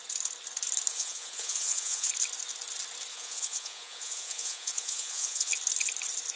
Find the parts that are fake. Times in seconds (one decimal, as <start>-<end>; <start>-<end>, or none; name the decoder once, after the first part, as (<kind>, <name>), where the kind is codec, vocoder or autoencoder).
0.9-2.1 (vocoder, Vocos); 3.1-5.5